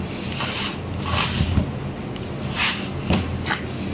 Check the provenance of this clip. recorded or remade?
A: recorded